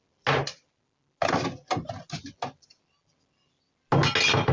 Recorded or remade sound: recorded